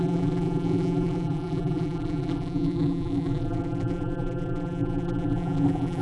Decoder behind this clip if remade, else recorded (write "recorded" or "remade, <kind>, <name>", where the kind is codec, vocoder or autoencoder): remade, vocoder, BigVGAN v2